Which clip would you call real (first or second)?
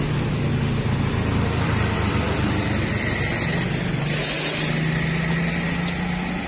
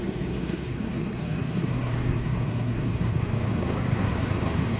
first